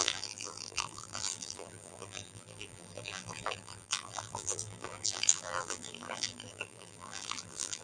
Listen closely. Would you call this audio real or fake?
fake